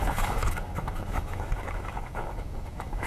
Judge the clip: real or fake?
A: fake